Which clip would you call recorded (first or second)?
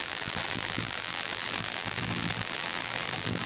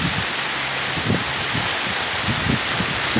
second